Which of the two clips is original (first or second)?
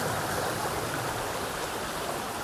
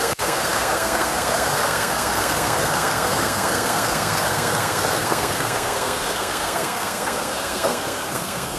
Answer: first